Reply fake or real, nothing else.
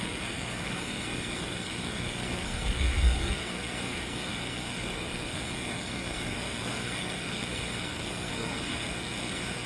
fake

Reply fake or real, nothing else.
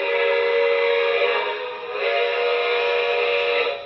fake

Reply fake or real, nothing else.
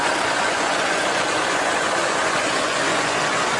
fake